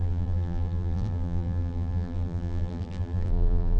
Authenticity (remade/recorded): remade